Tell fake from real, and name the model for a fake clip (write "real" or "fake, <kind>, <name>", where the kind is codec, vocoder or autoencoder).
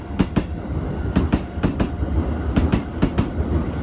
real